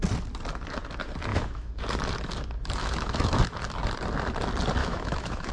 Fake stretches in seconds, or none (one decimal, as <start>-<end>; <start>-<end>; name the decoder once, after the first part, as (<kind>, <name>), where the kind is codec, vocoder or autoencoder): 1.3-1.8 (autoencoder, DAC-VAE); 2.8-3.4; 4.8-5.5